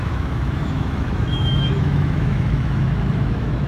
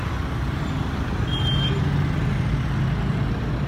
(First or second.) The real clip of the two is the second